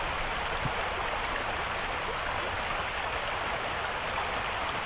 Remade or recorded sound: recorded